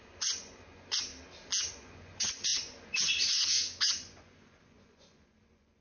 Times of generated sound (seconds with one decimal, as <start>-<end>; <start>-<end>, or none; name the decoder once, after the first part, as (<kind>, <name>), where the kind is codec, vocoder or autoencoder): 0.0-1.1 (vocoder, Vocos); 1.7-5.8